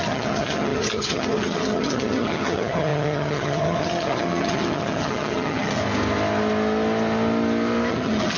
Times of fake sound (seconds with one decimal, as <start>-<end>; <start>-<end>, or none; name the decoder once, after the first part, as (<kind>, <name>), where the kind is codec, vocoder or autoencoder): 0.0-5.8 (vocoder, HiFi-GAN); 7.9-8.4